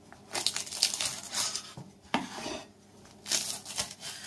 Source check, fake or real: real